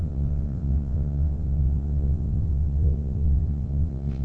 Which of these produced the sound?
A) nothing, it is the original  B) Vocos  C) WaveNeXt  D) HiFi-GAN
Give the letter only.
C